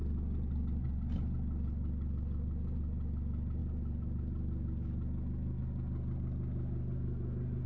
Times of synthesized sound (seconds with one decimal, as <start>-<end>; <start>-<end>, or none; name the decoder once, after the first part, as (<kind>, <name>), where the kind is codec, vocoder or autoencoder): none